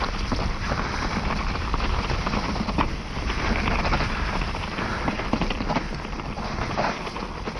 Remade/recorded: recorded